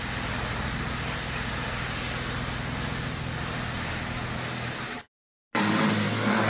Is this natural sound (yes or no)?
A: yes